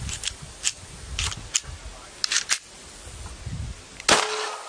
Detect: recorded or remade recorded